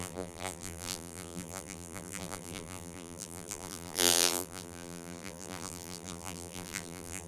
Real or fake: fake